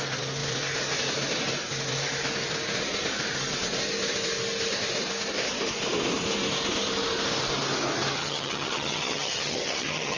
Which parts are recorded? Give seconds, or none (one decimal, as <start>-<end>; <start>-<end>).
0.0-8.2